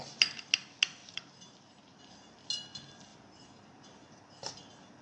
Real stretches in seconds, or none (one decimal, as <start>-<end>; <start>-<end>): 0.0-1.0; 2.0-3.1; 4.5-5.0